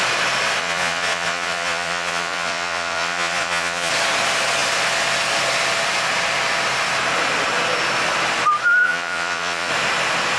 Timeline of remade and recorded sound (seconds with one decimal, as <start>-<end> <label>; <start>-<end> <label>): 0.0-0.6 recorded; 0.6-3.9 remade; 3.9-8.8 recorded; 8.8-9.7 remade; 9.7-10.4 recorded